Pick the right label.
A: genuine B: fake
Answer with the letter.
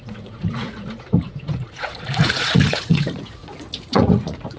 B